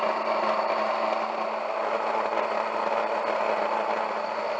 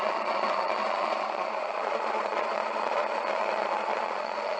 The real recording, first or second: first